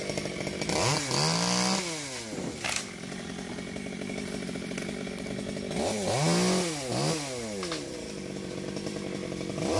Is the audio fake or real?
real